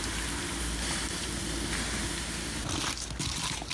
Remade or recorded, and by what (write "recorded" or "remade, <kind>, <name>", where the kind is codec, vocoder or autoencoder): recorded